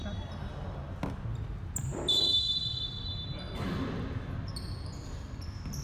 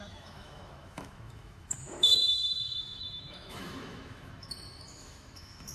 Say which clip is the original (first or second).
first